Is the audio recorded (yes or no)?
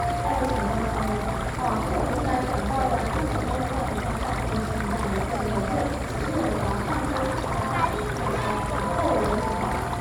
yes